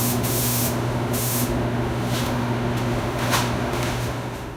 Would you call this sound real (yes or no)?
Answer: no